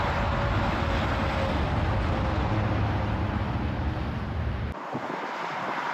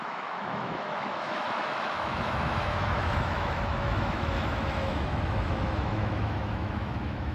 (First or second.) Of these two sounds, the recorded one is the first